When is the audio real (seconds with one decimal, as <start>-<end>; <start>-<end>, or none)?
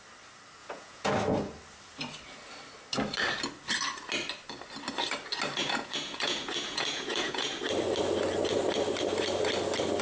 0.0-0.6; 1.1-5.6; 7.6-10.0